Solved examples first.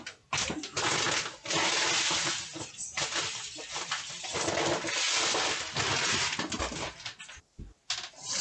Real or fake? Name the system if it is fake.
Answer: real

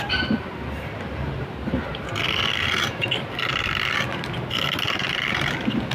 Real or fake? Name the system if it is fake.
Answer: real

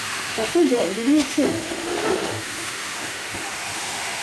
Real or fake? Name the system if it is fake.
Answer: fake, autoencoder, DAC-VAE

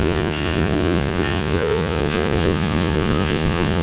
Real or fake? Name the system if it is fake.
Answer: fake, vocoder, Vocos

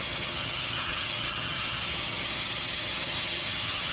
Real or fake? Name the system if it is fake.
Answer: fake, vocoder, HiFi-GAN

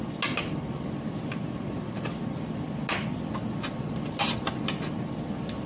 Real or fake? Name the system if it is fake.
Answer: real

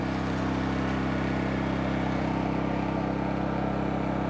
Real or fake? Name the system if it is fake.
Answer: real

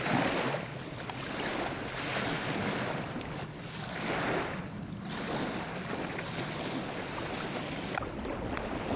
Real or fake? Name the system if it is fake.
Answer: real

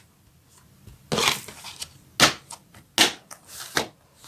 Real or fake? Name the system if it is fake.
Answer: real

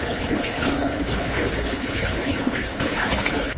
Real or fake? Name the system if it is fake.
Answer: fake, codec, HILCodec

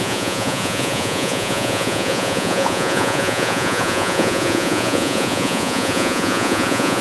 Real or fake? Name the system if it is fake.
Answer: fake, vocoder, Vocos